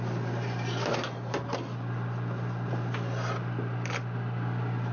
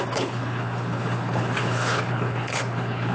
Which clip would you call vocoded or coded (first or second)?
second